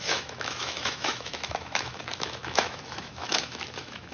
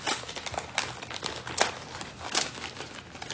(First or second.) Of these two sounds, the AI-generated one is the first